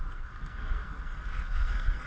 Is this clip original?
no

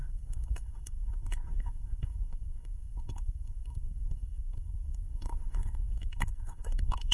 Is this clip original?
no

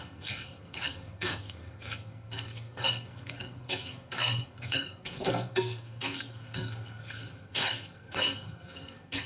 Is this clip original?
no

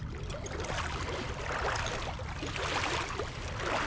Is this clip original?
yes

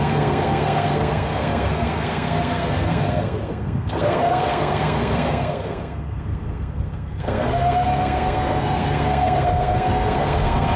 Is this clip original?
no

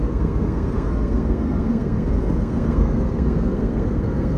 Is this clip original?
no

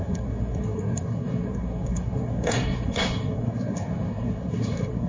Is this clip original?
no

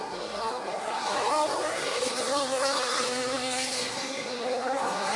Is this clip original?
no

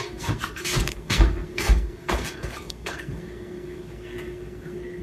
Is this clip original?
no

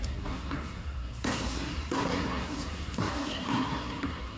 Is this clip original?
no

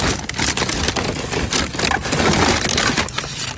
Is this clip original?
yes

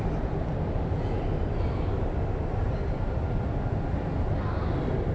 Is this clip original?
yes